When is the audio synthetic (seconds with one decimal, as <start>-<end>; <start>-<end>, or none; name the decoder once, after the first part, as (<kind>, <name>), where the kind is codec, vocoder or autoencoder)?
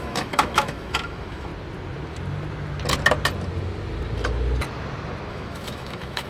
0.0-1.5 (autoencoder, DAC-VAE); 5.3-6.3